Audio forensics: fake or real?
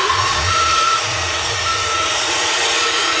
fake